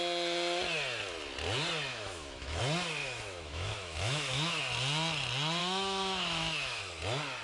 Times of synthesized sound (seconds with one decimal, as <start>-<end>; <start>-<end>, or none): 1.9-2.6; 3.0-4.6; 5.6-6.8